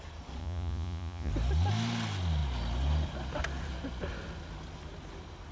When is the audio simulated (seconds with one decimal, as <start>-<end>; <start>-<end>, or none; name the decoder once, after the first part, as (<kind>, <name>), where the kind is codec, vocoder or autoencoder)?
0.4-1.3 (vocoder, Vocos)